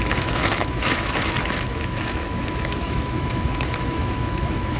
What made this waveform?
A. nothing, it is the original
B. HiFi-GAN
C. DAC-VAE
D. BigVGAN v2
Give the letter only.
C